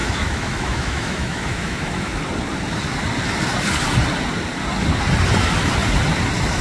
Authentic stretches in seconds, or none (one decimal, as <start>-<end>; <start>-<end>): 2.2-6.6